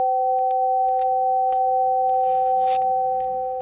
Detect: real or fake fake